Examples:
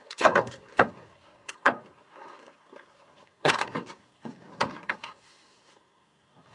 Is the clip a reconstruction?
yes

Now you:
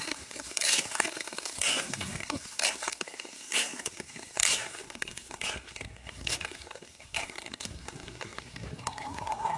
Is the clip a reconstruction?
yes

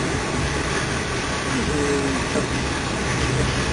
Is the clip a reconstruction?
no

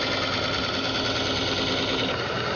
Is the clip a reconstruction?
no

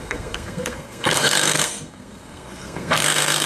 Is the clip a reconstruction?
yes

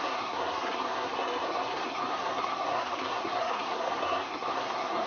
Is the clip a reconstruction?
yes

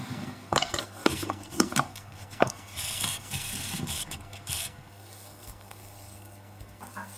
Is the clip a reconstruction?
yes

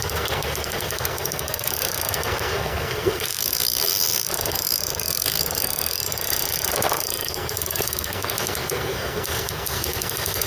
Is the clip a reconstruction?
yes